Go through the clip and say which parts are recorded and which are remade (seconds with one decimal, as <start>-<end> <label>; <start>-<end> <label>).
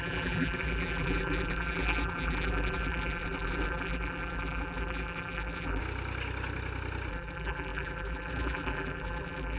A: 0.0-5.8 remade; 5.8-7.1 recorded; 7.1-9.6 remade